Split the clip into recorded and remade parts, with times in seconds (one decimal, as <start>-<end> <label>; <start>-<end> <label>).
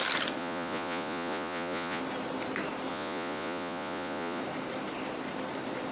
0.0-0.4 recorded; 0.4-2.0 remade; 2.0-2.9 recorded; 2.9-4.4 remade; 4.4-5.9 recorded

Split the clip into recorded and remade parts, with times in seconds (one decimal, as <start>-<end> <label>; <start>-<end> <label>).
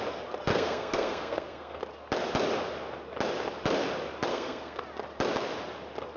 0.0-0.5 recorded; 0.5-1.8 remade; 1.8-4.3 recorded; 4.3-4.8 remade; 4.8-6.2 recorded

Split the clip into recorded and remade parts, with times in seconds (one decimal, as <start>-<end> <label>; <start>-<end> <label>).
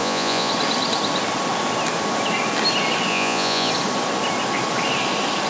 0.0-0.5 remade; 0.5-3.1 recorded; 3.1-3.7 remade; 3.7-5.5 recorded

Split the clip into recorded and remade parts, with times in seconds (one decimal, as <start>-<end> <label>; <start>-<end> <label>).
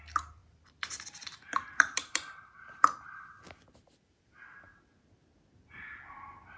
0.0-0.4 recorded; 0.4-4.4 remade; 4.4-6.6 recorded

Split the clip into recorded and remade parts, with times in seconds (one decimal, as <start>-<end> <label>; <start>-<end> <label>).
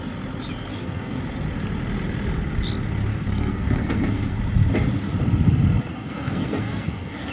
0.0-0.7 recorded; 0.7-1.2 remade; 1.2-3.1 recorded; 3.1-4.4 remade; 4.4-5.9 recorded; 5.9-7.3 remade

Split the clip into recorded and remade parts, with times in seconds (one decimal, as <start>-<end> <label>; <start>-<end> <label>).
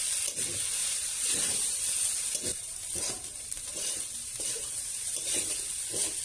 0.0-0.8 recorded; 0.8-1.8 remade; 1.8-2.5 recorded; 2.5-5.5 remade; 5.5-6.2 recorded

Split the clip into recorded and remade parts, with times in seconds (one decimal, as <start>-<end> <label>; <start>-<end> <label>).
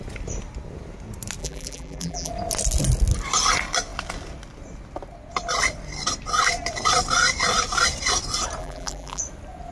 0.0-1.4 recorded; 1.4-2.3 remade; 2.3-8.6 recorded; 8.6-9.2 remade; 9.2-9.7 recorded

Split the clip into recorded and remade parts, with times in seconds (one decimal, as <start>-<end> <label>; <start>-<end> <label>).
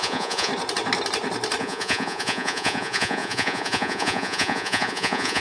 0.0-0.5 remade; 0.5-1.6 recorded; 1.6-5.4 remade